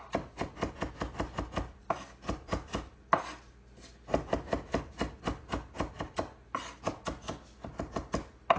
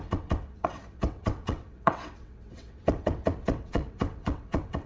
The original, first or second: first